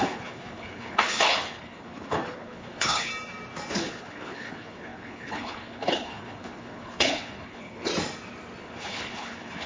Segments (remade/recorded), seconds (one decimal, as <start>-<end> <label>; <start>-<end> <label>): 0.0-3.1 remade; 3.1-3.7 recorded; 3.7-7.9 remade; 7.9-8.6 recorded; 8.6-9.7 remade